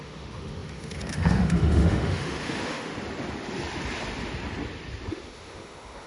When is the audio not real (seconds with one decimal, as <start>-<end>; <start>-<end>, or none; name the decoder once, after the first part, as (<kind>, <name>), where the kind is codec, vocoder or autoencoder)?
0.0-2.9 (autoencoder, DAC-VAE); 5.1-6.1